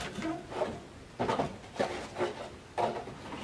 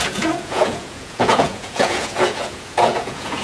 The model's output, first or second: second